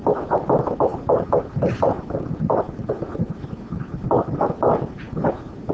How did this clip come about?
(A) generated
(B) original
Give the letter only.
B